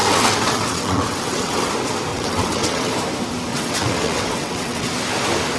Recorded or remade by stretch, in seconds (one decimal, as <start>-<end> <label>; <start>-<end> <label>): 0.0-1.7 remade; 1.7-2.1 recorded; 2.1-2.9 remade; 2.9-3.5 recorded; 3.5-4.9 remade; 4.9-5.6 recorded